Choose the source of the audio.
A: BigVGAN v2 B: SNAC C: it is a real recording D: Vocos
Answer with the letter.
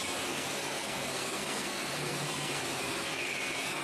B